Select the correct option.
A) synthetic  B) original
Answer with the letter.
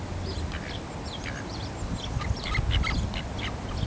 B